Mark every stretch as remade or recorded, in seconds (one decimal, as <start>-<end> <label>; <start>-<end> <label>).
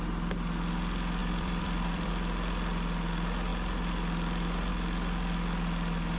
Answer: 0.0-1.2 recorded; 1.2-2.1 remade; 2.1-6.2 recorded